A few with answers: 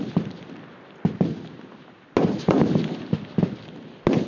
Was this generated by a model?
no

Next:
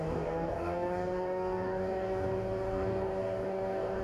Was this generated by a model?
yes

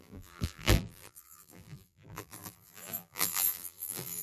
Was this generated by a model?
yes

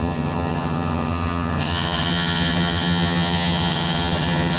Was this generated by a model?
yes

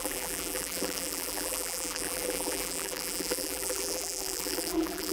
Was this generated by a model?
yes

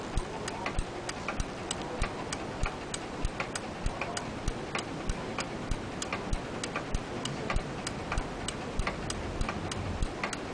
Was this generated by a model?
no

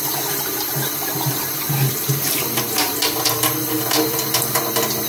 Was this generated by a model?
yes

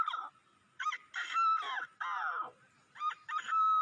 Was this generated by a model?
no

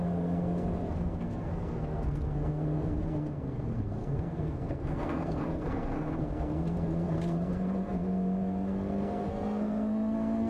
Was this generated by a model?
yes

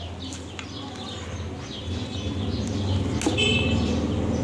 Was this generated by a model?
no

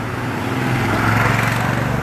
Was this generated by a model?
no